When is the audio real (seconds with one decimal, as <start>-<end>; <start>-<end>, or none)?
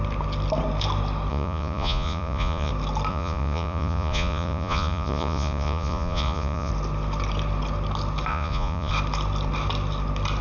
0.0-1.3; 2.7-3.1; 6.7-8.3; 8.9-10.4